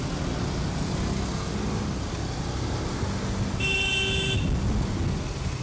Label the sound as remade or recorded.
recorded